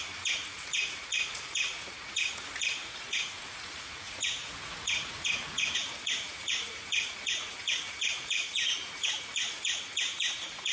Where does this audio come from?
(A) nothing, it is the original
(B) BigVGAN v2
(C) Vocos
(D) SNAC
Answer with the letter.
C